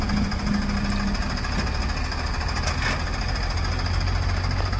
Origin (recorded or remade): recorded